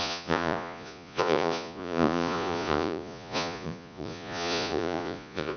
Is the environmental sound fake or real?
fake